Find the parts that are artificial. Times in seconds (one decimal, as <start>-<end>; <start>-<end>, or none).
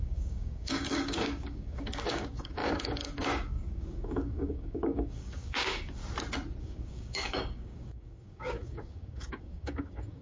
0.0-6.0; 6.6-10.2